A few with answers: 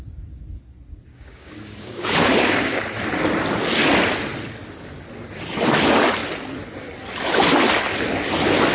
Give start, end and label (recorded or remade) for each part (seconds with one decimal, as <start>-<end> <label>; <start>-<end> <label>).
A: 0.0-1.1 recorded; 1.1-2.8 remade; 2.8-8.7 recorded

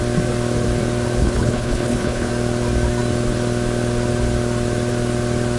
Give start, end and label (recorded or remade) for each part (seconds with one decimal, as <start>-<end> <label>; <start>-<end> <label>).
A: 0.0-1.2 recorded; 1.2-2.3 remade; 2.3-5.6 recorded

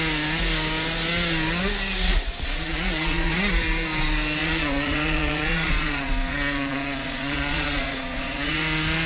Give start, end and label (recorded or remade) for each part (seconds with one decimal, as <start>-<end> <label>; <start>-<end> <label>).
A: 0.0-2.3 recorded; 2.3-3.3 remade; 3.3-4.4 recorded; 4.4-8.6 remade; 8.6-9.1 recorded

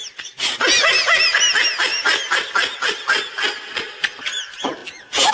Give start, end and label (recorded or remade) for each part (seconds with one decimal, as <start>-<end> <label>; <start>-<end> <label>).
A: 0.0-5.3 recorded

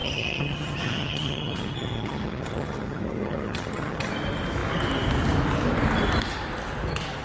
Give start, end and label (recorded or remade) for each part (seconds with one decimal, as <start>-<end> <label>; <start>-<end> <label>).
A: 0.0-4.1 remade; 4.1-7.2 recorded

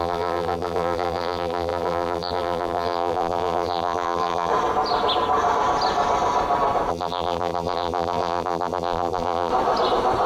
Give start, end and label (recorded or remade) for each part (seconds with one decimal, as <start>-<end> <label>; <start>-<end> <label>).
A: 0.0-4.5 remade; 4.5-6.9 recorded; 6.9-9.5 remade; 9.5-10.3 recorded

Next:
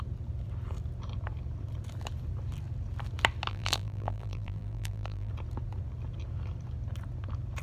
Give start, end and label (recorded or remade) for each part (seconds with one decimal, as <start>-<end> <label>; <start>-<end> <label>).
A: 0.0-3.5 recorded; 3.5-5.3 remade; 5.3-7.6 recorded

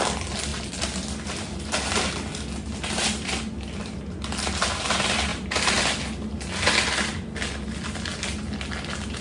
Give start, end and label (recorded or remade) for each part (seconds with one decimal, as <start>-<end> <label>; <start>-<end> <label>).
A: 0.0-5.3 recorded; 5.3-5.8 remade; 5.8-9.2 recorded